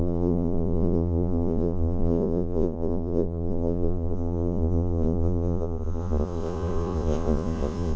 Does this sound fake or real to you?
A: fake